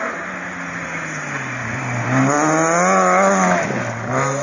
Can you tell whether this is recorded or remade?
recorded